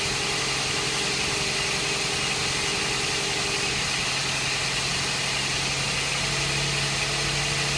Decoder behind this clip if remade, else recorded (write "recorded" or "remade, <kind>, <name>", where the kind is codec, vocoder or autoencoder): recorded